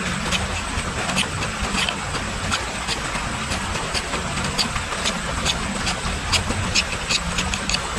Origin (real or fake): real